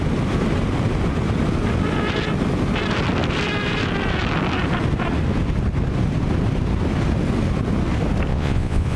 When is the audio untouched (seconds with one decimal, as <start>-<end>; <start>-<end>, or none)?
0.0-8.3